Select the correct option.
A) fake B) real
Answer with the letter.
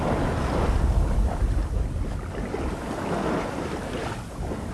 B